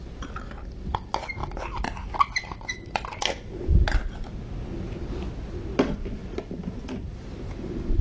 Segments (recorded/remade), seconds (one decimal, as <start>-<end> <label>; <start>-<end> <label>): 0.0-8.0 recorded